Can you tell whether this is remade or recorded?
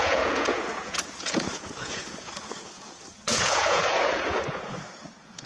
remade